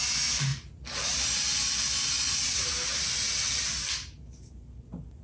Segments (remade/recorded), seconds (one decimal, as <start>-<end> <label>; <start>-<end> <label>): 0.0-5.2 recorded